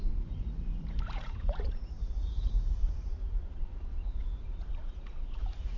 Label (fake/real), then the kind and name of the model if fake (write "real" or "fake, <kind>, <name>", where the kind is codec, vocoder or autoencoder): fake, vocoder, Vocos